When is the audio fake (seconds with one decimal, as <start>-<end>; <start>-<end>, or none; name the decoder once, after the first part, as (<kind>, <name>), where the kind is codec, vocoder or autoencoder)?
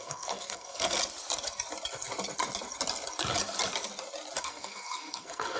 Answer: 0.0-1.0 (codec, SNAC); 4.4-5.6